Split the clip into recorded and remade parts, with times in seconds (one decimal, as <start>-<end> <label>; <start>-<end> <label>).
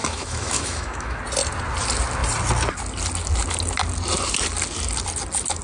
0.0-1.2 remade; 1.2-5.6 recorded